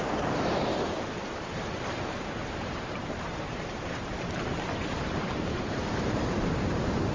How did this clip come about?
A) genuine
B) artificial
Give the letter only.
B